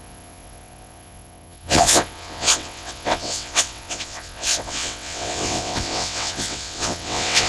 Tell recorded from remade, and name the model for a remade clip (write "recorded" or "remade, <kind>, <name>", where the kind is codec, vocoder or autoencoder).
remade, vocoder, WaveNeXt